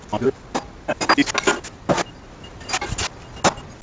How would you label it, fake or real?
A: real